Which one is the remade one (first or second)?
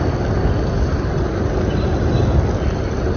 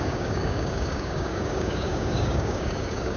second